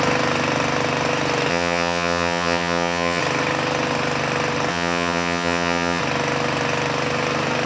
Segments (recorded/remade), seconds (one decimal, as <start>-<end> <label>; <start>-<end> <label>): 0.0-1.5 recorded; 1.5-3.2 remade; 3.2-4.7 recorded; 4.7-6.0 remade; 6.0-7.7 recorded